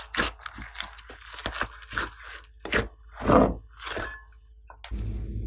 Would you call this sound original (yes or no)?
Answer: yes